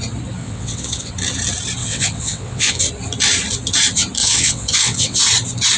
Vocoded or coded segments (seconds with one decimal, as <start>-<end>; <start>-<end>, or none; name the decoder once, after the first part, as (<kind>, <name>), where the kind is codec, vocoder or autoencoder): 0.4-1.1 (vocoder, WaveNeXt); 1.8-2.8; 4.2-5.2